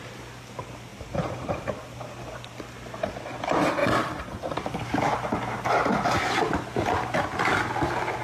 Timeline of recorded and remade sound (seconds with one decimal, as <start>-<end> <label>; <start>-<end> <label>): 0.0-0.9 recorded; 0.9-1.7 remade; 1.7-3.8 recorded; 3.8-5.7 remade; 5.7-8.2 recorded

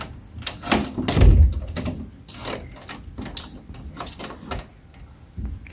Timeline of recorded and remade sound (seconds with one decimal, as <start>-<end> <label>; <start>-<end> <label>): 0.0-5.7 recorded

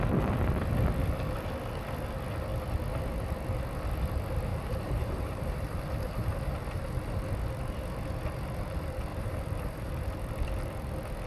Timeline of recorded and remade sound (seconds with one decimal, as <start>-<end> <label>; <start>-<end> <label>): 0.0-4.5 recorded; 4.5-7.2 remade; 7.2-9.1 recorded; 9.1-9.9 remade; 9.9-11.3 recorded

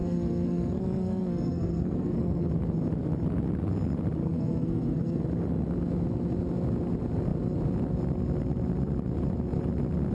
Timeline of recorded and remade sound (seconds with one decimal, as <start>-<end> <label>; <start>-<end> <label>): 0.0-2.5 remade; 2.5-4.2 recorded; 4.2-5.2 remade; 5.2-10.1 recorded

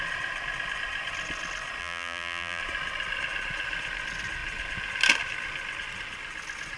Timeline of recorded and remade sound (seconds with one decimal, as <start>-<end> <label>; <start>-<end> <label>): 0.0-1.8 recorded; 1.8-2.6 remade; 2.6-6.8 recorded